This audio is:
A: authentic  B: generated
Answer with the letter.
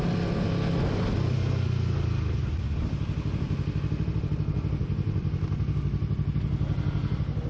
A